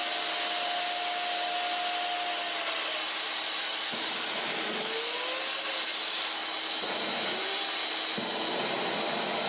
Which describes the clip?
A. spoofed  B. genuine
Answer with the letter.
B